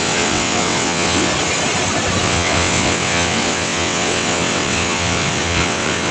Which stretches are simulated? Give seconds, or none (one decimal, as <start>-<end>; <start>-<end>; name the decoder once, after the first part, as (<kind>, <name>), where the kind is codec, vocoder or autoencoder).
0.0-1.3 (vocoder, WaveNeXt); 2.2-6.1